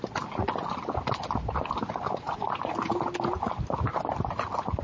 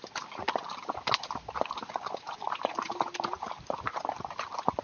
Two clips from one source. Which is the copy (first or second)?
second